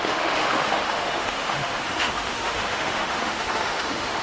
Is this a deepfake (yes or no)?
yes